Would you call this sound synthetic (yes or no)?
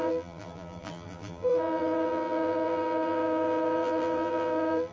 yes